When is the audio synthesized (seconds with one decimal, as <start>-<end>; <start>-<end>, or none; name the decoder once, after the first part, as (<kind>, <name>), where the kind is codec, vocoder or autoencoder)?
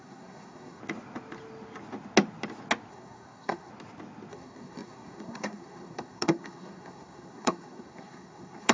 0.0-0.8 (codec, SNAC); 2.9-3.7; 4.3-8.7